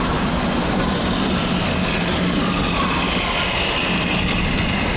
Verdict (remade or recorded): recorded